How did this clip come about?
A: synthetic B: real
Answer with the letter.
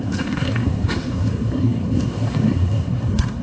A